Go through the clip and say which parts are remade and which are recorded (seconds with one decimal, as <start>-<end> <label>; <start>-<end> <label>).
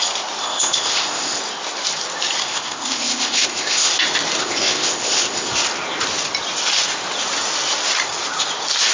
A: 0.0-0.4 recorded; 0.4-1.4 remade; 1.4-2.4 recorded; 2.4-3.9 remade; 3.9-4.4 recorded; 4.4-5.5 remade; 5.5-8.9 recorded